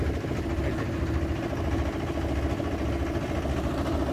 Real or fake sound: real